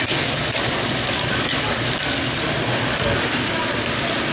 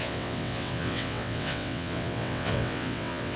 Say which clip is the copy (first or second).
second